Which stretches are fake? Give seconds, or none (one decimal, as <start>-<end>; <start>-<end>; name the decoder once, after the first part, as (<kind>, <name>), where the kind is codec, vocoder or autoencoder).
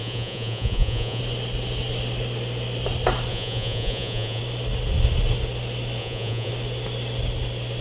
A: 0.0-1.2 (vocoder, Vocos); 3.3-4.4; 6.0-6.5